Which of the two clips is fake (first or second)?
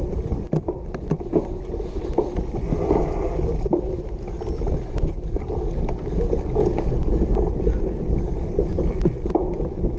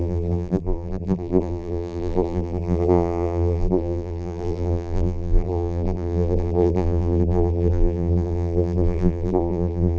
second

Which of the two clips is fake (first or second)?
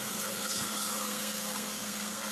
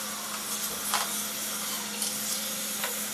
first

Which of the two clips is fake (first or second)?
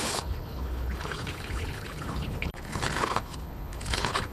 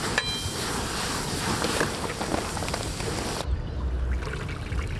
first